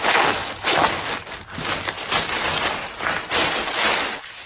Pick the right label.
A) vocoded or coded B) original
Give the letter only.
B